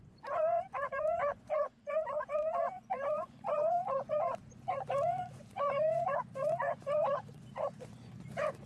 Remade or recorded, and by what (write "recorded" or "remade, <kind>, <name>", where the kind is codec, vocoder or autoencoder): remade, vocoder, Vocos